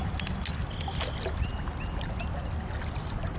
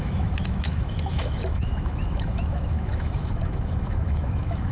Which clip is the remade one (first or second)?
second